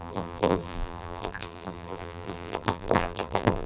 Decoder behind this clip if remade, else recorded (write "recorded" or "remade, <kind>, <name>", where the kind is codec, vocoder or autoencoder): remade, vocoder, BigVGAN v2